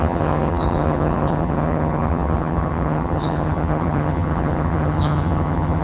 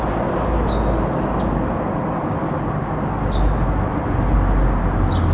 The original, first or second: second